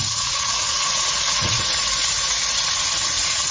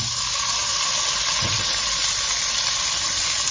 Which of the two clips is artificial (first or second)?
first